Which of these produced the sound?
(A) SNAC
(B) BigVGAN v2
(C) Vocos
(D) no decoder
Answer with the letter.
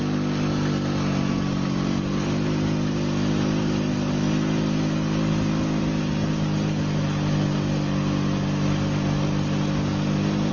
D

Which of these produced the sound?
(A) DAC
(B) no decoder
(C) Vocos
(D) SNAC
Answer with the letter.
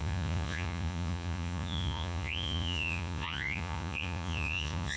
C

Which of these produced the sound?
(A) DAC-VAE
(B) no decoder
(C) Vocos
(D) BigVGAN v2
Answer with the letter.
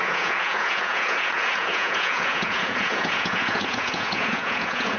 C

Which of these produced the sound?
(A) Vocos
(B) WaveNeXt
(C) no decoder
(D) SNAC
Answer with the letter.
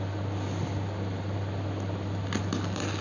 C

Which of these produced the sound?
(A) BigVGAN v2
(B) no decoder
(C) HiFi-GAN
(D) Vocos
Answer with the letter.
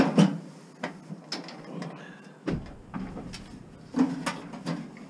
B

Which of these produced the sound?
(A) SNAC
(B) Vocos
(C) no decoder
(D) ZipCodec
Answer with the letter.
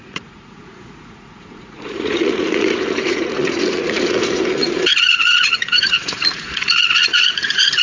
B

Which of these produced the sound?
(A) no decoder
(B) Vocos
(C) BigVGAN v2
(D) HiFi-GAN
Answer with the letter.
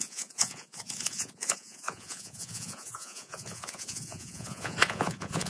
B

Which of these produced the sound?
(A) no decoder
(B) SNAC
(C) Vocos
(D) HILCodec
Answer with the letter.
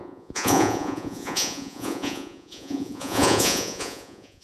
C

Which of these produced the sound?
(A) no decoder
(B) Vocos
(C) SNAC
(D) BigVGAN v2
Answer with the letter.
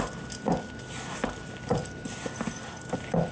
A